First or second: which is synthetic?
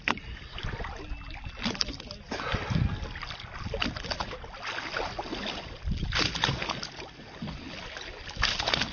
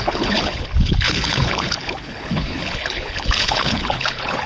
second